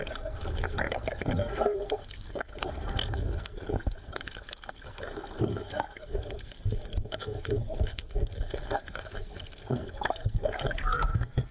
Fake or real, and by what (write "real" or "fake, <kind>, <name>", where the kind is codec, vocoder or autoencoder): fake, codec, SNAC